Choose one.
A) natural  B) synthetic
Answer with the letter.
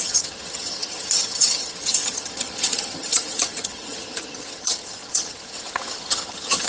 B